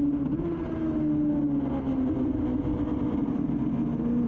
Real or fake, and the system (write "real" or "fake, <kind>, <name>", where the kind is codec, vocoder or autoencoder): real